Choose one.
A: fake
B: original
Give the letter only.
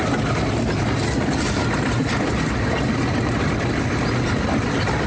B